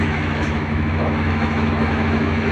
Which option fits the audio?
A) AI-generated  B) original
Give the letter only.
A